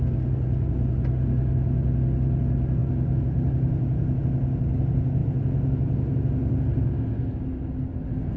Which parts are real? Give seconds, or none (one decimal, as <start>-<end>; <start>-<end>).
0.0-8.4